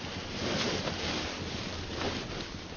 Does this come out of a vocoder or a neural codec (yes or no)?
no